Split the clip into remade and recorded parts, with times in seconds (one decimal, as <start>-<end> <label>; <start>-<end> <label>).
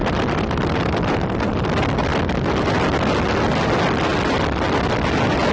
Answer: 0.0-2.1 remade; 2.1-5.5 recorded